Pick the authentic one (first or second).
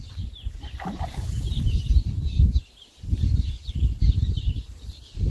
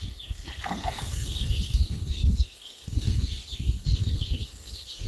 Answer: first